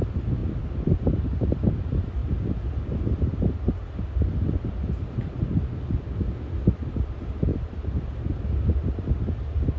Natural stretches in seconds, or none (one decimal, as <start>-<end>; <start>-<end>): 0.0-0.4; 1.8-2.2; 6.3-7.5; 9.1-9.8